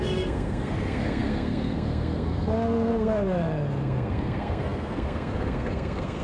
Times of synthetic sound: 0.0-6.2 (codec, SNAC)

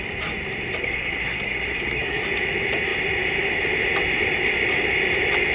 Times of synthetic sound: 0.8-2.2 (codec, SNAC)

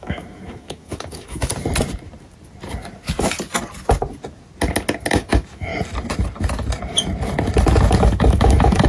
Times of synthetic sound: 0.0-1.5 (autoencoder, DAC-VAE); 5.1-5.7; 8.0-8.9